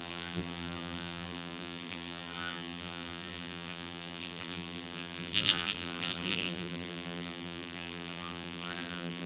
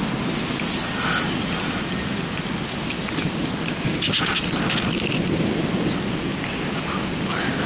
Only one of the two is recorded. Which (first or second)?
second